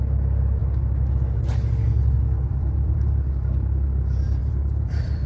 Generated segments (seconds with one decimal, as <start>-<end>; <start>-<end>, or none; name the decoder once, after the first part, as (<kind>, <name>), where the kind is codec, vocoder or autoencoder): 0.0-0.6 (vocoder, BigVGAN v2); 2.5-5.3